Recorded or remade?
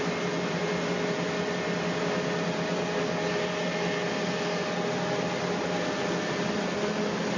recorded